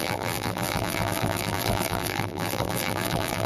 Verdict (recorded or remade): remade